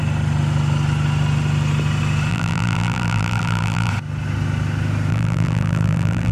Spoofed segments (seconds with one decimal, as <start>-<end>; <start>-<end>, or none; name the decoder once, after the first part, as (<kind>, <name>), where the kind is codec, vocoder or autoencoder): 2.3-3.9 (vocoder, BigVGAN v2); 5.1-6.3